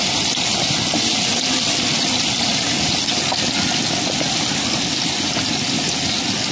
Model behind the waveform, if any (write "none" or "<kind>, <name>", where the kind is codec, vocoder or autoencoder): none